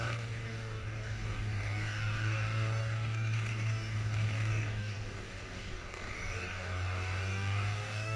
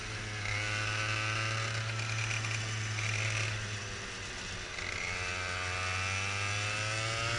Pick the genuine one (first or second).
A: second